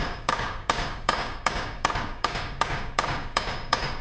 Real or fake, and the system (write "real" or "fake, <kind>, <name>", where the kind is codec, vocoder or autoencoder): fake, codec, DAC